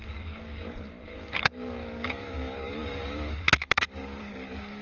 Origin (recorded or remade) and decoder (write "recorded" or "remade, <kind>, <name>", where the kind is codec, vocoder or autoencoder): remade, codec, DAC